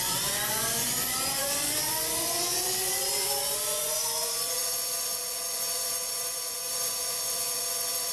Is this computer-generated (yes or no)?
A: yes